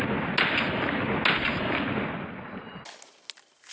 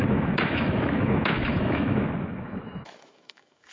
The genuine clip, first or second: first